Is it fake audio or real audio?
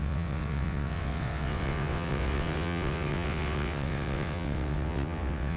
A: fake